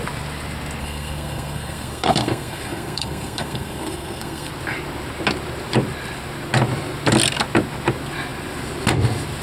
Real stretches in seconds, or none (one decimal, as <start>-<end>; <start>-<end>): 0.0-0.8; 4.5-9.4

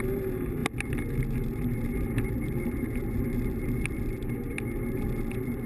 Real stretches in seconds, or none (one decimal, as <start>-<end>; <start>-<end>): 0.0-5.7

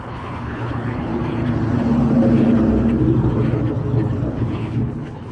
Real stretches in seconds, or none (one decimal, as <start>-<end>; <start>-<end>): 1.1-4.3

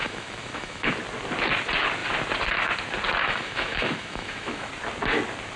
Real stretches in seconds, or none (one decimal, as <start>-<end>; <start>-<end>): 0.9-3.2; 4.7-5.6

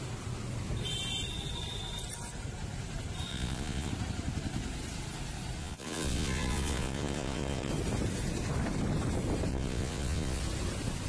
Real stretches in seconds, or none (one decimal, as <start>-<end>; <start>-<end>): 0.0-3.3; 3.9-5.6; 7.7-9.5; 10.4-11.1

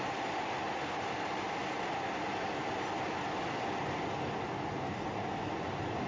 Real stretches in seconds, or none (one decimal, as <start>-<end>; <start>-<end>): 0.0-6.1

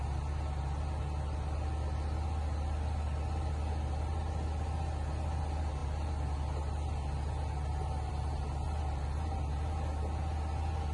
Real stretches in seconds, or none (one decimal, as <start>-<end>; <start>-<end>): 0.0-10.9